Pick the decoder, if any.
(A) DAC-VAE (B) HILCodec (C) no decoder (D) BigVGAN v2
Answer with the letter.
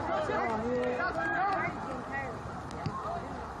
C